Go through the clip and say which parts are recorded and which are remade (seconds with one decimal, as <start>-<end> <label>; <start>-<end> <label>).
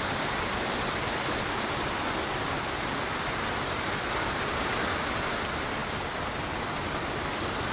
0.0-7.7 recorded